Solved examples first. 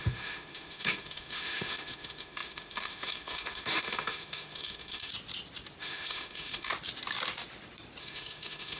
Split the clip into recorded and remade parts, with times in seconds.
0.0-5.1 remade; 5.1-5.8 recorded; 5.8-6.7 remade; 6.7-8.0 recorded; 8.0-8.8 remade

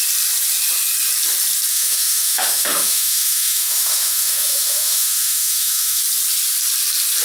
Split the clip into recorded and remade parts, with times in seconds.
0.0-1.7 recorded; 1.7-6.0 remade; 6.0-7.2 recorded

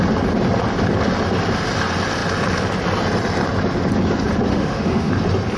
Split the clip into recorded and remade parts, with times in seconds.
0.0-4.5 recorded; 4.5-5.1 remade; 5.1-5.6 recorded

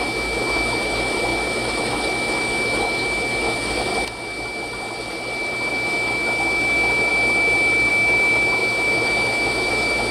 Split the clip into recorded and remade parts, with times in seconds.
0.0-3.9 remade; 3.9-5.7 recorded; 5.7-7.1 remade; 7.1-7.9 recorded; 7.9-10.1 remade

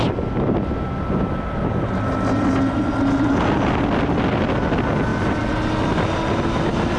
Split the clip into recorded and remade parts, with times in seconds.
0.0-7.0 recorded